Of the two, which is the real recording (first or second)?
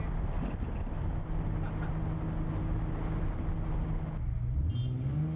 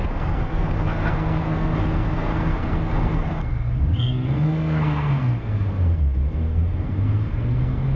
first